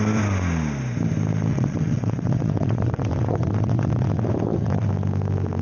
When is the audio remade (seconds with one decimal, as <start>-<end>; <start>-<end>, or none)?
1.5-4.9